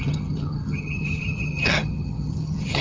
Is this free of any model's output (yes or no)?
no